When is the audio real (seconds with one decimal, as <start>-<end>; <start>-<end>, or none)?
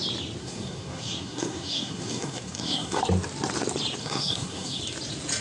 0.0-0.4; 3.0-4.0; 4.8-5.4